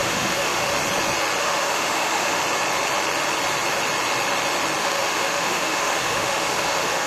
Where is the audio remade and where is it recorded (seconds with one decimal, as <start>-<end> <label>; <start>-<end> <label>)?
0.0-0.7 remade; 0.7-1.4 recorded; 1.4-2.4 remade; 2.4-4.8 recorded; 4.8-7.1 remade